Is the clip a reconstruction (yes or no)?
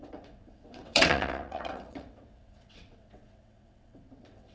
yes